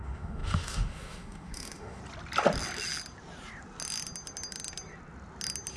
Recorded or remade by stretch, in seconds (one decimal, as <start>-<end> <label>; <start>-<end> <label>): 0.0-2.0 remade; 2.0-5.8 recorded